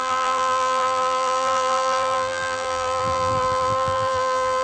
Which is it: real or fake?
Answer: fake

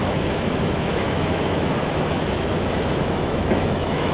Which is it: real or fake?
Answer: fake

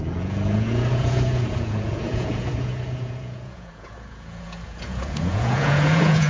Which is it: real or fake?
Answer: fake